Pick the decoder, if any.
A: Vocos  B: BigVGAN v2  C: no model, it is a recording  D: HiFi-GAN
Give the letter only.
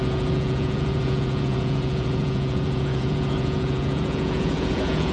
A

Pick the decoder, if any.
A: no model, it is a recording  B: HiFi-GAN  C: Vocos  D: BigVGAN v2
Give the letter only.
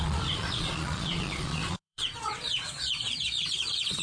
C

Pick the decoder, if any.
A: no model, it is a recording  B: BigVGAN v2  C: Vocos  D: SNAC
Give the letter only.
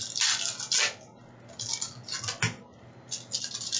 A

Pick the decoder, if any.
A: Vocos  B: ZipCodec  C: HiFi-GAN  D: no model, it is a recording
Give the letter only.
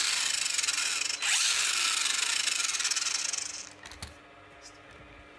D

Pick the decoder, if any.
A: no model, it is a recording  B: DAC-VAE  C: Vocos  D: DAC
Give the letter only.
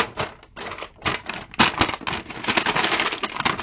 A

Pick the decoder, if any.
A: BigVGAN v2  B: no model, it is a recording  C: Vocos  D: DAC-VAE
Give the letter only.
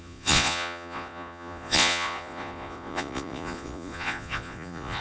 C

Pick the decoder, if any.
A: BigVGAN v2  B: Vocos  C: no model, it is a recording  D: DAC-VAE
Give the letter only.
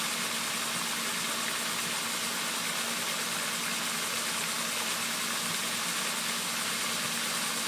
C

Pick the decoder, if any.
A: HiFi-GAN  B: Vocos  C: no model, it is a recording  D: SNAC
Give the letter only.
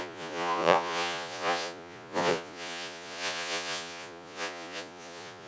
B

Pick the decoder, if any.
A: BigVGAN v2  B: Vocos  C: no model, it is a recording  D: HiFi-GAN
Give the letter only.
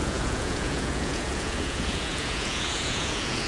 B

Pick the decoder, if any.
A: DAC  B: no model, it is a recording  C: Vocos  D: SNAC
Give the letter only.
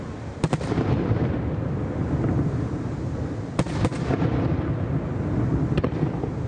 B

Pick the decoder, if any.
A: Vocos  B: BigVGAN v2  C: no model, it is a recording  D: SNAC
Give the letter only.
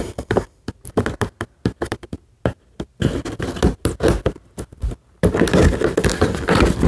C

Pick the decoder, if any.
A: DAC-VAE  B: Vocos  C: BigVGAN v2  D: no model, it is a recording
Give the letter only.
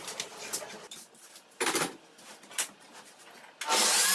D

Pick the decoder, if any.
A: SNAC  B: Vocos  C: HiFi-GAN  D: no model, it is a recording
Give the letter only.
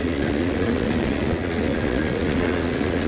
B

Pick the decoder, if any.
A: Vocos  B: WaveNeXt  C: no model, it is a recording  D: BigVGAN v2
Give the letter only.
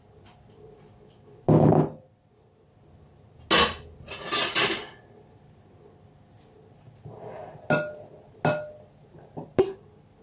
C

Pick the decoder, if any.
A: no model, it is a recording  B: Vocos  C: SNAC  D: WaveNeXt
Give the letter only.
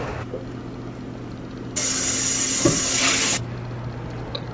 A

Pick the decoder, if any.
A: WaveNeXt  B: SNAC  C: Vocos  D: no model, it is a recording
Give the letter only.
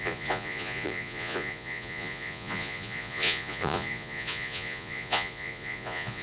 C